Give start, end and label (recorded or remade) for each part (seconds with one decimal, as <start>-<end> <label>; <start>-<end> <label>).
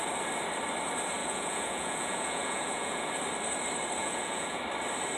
0.0-1.2 recorded; 1.2-3.1 remade; 3.1-4.0 recorded; 4.0-4.6 remade; 4.6-5.2 recorded